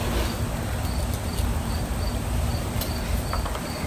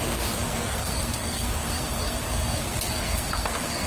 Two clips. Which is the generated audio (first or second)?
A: second